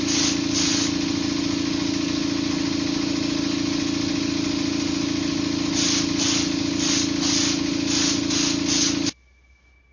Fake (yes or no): no